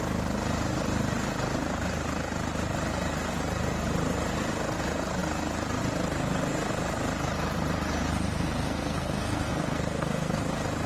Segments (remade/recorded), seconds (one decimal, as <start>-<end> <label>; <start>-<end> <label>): 0.0-8.6 recorded; 8.6-10.4 remade; 10.4-10.9 recorded